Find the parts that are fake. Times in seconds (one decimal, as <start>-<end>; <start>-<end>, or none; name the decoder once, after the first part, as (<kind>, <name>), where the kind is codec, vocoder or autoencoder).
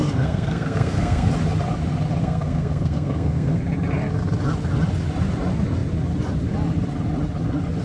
0.0-1.3 (codec, SNAC); 2.2-3.6